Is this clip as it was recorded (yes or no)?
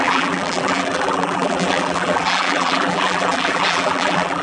no